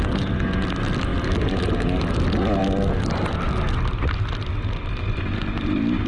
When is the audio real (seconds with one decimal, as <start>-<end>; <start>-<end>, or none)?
0.0-6.1